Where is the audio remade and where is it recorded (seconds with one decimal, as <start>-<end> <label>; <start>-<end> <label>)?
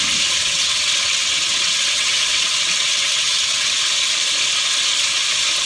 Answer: 0.0-0.4 recorded; 0.4-3.8 remade; 3.8-5.7 recorded